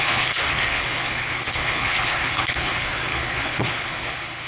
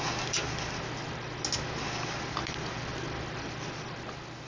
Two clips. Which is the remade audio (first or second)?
first